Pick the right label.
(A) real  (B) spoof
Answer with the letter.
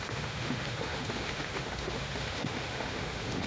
B